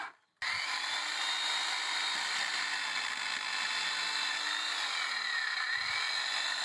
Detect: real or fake real